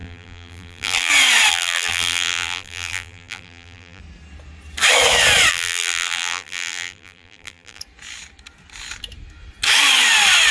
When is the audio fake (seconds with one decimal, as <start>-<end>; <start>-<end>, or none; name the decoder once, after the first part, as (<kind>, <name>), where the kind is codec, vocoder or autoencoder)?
0.0-1.1 (vocoder, BigVGAN v2); 1.5-4.0; 5.5-7.8